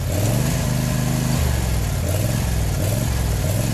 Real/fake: real